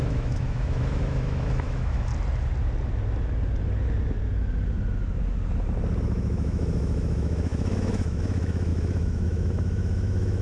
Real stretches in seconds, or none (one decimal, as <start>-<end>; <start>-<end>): 2.1-6.0